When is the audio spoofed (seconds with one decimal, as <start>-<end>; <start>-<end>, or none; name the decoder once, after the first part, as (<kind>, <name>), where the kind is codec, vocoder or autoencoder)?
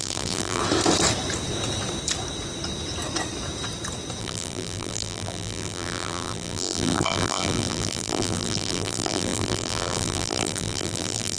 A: 0.0-0.6 (vocoder, BigVGAN v2); 4.2-11.4